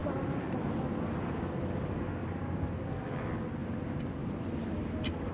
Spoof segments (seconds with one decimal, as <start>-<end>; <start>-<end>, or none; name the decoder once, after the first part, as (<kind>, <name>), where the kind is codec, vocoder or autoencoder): 2.2-3.0 (vocoder, BigVGAN v2)